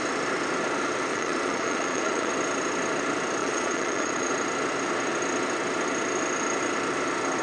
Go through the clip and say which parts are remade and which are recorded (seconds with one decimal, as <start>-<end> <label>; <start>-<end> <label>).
0.0-1.1 recorded; 1.1-2.3 remade; 2.3-3.4 recorded; 3.4-4.3 remade; 4.3-7.4 recorded